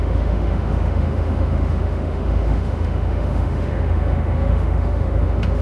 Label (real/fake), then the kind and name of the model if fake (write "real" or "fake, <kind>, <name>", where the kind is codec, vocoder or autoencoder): fake, autoencoder, DAC-VAE